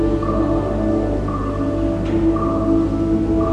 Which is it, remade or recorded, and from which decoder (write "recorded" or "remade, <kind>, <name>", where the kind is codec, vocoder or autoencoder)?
recorded